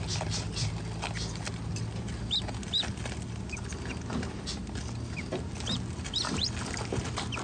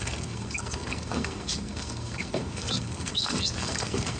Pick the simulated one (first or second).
second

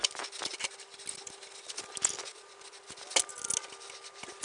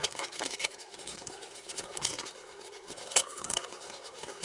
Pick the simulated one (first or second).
second